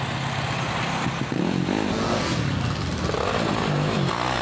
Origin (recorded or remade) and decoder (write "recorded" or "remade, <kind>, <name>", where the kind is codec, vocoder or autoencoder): recorded